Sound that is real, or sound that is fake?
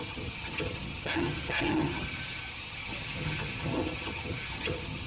fake